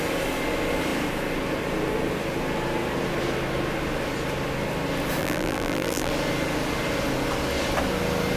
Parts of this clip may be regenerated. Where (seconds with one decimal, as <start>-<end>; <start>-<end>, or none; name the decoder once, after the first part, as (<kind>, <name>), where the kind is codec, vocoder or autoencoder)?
5.2-6.1 (vocoder, BigVGAN v2)